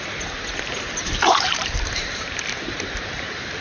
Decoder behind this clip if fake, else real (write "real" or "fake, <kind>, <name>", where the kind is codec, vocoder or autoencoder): fake, vocoder, BigVGAN v2